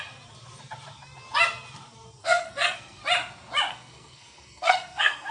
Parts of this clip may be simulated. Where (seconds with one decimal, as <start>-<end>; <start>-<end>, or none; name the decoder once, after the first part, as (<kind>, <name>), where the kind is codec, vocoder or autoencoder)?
2.2-3.0 (codec, SNAC); 3.7-5.3